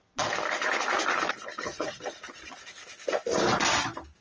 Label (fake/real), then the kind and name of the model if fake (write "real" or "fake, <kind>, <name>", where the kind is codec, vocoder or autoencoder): real